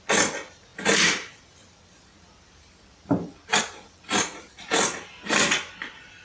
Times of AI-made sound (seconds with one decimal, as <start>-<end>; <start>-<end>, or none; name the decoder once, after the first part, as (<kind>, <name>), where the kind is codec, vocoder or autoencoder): none